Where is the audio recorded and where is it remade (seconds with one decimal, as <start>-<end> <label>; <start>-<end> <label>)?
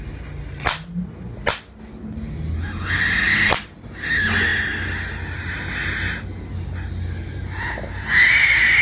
0.0-8.8 recorded